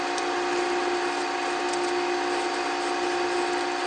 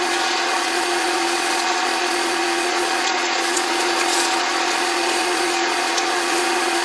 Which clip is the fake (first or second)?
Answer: second